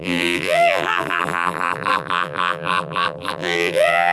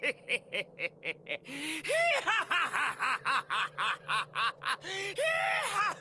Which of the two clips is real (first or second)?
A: second